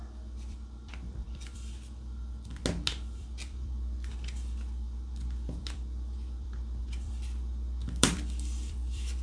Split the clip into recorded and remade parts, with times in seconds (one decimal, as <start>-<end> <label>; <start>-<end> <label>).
0.0-2.6 remade; 2.6-3.2 recorded; 3.2-9.2 remade